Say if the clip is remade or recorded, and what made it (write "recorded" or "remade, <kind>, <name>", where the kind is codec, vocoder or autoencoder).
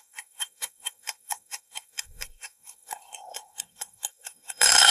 remade, codec, SNAC